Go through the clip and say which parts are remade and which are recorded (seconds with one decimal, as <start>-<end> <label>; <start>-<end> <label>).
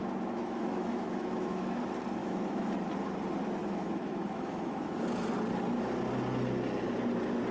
0.0-1.8 remade; 1.8-2.2 recorded; 2.2-2.7 remade; 2.7-3.6 recorded; 3.6-5.0 remade; 5.0-7.5 recorded